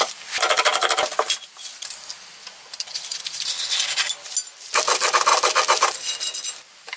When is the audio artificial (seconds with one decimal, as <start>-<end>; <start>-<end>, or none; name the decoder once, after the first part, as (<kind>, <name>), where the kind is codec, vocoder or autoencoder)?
none